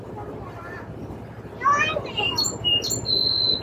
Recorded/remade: recorded